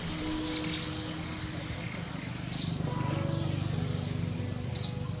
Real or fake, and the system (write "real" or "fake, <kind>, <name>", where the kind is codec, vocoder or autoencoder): real